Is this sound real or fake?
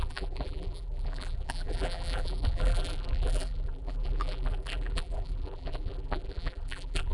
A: fake